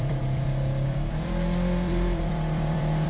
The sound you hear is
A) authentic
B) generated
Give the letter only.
B